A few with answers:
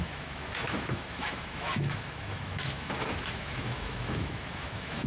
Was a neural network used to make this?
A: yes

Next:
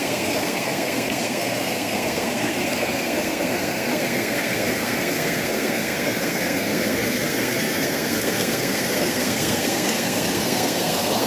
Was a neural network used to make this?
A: yes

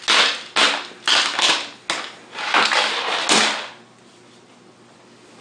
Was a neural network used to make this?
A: no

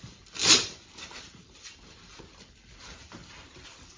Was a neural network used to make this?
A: yes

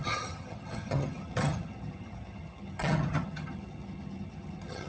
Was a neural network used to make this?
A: yes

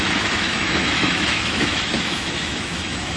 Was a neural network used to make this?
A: yes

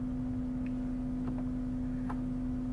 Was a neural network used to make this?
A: no